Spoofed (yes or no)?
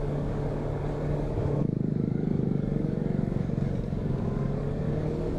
yes